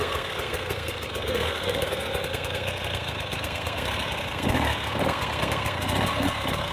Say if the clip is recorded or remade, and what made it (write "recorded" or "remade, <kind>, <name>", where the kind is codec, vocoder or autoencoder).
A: remade, codec, SNAC